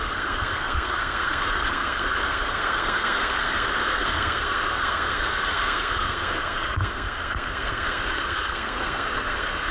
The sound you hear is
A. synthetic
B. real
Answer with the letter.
A